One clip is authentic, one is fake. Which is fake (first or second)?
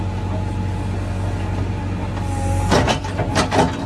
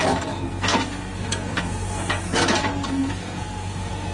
second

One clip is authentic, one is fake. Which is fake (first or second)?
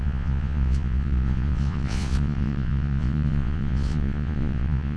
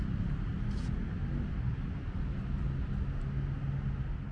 first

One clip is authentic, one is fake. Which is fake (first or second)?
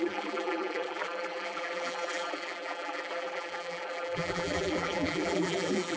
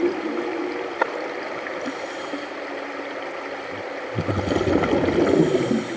first